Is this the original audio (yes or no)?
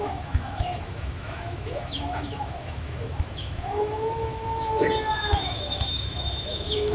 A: no